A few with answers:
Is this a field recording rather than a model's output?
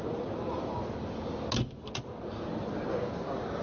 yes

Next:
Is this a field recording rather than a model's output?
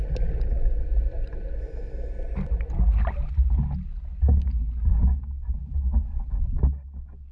yes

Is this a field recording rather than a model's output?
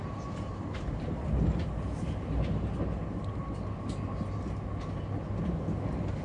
yes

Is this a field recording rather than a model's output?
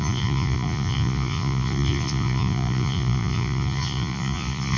no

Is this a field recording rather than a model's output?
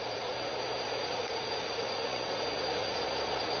no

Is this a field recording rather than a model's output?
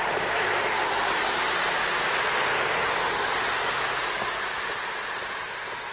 yes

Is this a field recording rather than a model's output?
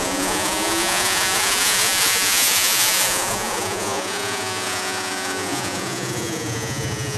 no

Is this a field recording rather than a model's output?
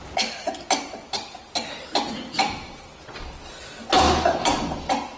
yes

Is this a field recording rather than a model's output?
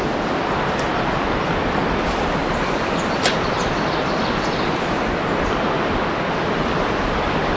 yes